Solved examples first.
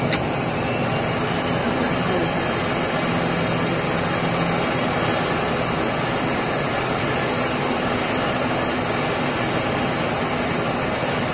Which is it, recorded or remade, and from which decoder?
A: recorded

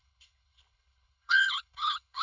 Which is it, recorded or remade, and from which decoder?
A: remade, codec, HILCodec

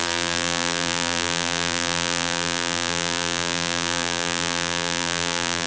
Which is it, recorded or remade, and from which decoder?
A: remade, vocoder, BigVGAN v2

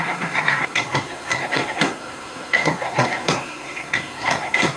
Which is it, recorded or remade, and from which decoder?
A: remade, codec, SNAC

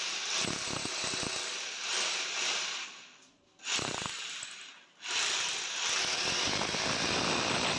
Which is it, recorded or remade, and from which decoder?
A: recorded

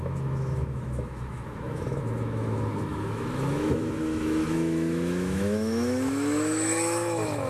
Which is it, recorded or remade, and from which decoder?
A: remade, autoencoder, DAC-VAE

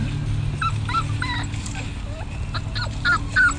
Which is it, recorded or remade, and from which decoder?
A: recorded